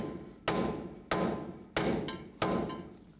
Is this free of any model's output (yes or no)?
yes